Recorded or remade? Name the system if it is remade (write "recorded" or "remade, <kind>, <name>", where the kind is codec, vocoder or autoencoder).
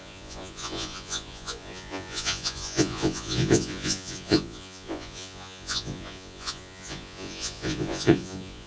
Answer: remade, vocoder, Vocos